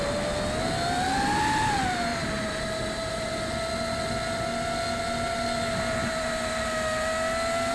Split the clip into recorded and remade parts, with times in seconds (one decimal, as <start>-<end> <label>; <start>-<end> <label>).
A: 0.0-2.1 recorded; 2.1-3.3 remade; 3.3-6.0 recorded; 6.0-6.7 remade; 6.7-7.7 recorded